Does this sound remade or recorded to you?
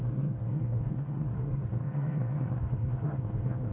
remade